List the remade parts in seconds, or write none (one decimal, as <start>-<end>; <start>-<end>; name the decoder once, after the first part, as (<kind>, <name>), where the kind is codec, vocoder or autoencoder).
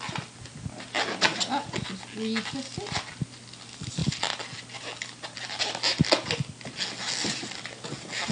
none